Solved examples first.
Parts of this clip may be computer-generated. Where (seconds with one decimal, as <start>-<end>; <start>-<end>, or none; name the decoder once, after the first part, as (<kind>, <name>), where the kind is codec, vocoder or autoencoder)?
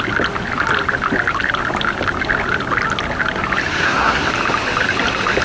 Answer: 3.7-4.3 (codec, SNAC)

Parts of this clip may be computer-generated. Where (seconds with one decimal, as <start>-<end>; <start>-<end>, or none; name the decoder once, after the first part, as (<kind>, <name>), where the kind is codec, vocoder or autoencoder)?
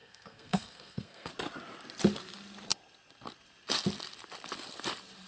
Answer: 0.0-1.3 (codec, SNAC)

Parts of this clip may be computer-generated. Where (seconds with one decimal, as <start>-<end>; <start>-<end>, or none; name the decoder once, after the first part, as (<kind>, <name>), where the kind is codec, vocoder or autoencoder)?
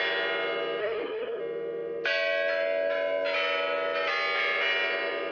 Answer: 0.8-1.4 (codec, SNAC)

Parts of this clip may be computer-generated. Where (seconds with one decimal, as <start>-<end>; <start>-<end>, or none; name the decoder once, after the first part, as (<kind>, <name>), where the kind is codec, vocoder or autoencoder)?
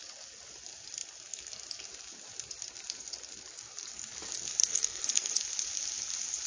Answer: 4.6-5.3 (codec, SNAC)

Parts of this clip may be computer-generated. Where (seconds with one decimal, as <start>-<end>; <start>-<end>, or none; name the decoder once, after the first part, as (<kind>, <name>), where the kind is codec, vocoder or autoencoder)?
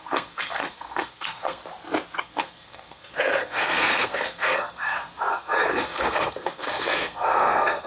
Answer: 0.0-1.6 (codec, SNAC); 2.2-7.9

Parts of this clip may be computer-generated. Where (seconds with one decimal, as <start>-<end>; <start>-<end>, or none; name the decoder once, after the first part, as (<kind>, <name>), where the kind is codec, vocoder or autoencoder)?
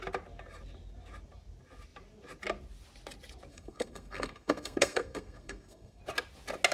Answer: 3.5-6.0 (codec, SNAC)